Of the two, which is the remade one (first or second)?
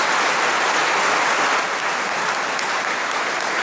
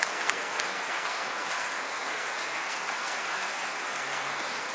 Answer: second